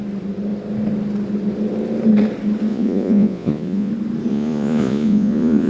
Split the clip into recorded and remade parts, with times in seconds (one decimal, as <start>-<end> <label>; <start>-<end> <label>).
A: 0.0-2.7 recorded; 2.7-3.9 remade; 3.9-4.3 recorded; 4.3-5.7 remade